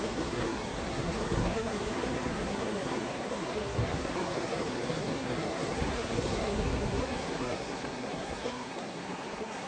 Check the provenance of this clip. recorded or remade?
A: remade